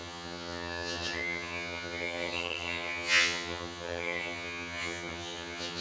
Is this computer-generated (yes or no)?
yes